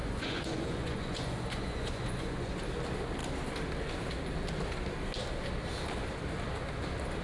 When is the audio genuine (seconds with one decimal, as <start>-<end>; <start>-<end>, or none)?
2.6-7.2